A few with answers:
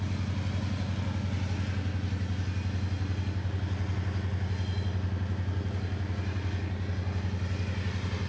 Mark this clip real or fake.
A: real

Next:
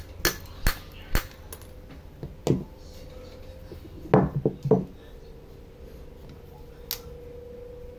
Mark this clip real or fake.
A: real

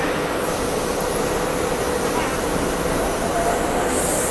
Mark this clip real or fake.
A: real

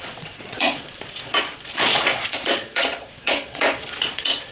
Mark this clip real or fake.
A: fake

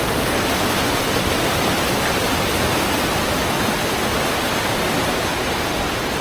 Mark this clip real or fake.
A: real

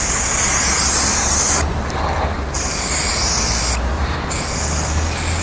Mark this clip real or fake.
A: real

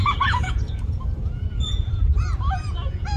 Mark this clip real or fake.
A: fake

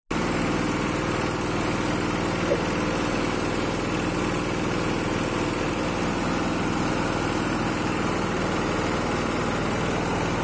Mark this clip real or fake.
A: real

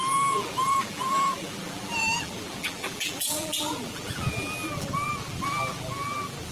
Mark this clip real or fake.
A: fake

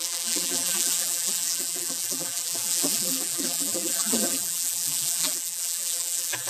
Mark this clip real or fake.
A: fake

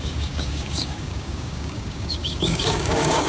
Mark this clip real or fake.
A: fake